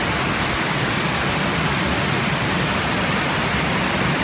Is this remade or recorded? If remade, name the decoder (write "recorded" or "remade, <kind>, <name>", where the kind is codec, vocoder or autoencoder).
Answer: recorded